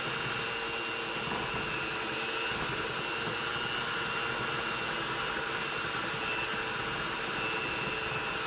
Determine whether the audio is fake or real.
real